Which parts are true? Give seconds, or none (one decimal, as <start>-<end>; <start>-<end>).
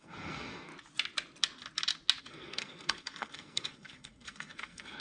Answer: 0.7-2.2